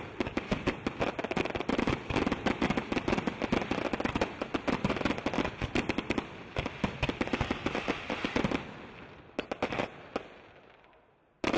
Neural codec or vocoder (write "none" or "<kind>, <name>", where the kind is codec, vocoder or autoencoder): none